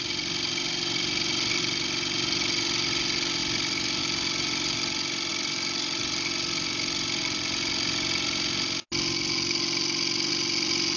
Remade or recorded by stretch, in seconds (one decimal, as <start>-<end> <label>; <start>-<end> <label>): 0.0-11.0 recorded